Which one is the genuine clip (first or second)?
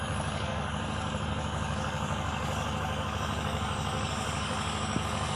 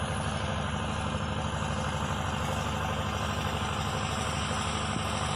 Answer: second